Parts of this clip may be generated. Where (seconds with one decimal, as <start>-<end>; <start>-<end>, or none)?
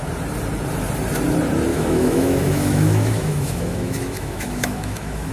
1.7-5.3